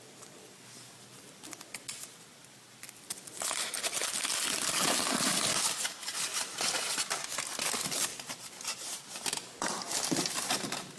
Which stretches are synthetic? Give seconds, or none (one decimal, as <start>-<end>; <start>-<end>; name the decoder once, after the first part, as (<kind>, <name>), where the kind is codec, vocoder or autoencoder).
6.1-6.9 (vocoder, BigVGAN v2); 8.1-10.3

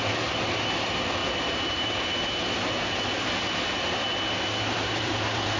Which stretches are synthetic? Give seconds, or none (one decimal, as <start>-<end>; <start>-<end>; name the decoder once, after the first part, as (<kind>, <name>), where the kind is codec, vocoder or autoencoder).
0.0-1.2 (vocoder, BigVGAN v2); 4.6-5.6

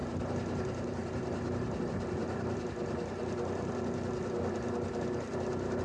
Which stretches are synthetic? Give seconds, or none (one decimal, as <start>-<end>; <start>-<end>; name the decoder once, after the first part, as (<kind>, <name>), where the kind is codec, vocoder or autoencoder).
0.0-1.8 (vocoder, BigVGAN v2)

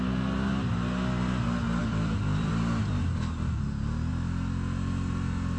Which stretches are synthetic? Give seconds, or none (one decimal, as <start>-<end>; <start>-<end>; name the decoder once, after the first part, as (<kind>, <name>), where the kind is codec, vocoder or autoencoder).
1.8-2.5 (vocoder, BigVGAN v2)

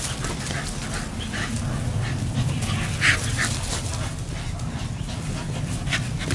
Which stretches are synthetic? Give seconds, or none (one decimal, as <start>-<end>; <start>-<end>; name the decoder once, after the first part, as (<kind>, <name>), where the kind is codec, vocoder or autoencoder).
3.9-4.8 (vocoder, BigVGAN v2)

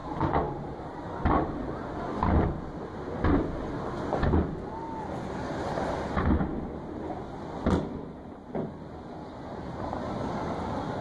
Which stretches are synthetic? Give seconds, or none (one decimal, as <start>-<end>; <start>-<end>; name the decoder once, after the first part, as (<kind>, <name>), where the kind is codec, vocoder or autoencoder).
0.0-2.6 (vocoder, BigVGAN v2)

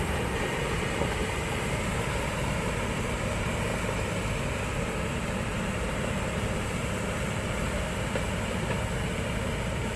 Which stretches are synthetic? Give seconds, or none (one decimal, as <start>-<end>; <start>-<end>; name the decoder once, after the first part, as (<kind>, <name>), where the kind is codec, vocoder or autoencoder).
0.0-3.7 (vocoder, BigVGAN v2); 4.4-10.0